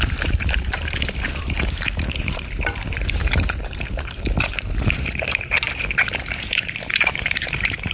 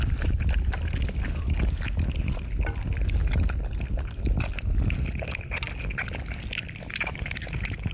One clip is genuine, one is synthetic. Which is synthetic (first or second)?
first